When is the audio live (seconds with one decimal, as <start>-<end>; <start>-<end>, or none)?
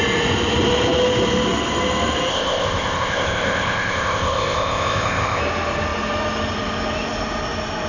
0.0-2.3; 5.4-7.9